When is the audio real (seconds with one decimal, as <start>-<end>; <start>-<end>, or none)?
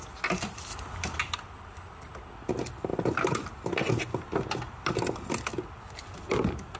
0.0-6.8